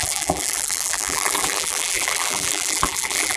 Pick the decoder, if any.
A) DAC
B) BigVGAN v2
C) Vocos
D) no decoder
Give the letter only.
B